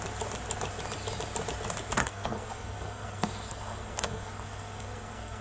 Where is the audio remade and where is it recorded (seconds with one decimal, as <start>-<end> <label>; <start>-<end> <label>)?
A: 0.0-2.0 recorded; 2.0-5.4 remade